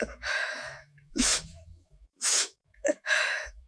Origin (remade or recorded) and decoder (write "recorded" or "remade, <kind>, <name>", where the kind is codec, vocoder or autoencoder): remade, autoencoder, DAC-VAE